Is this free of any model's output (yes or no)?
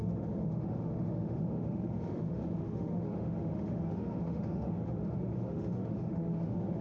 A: no